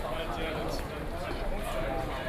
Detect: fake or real real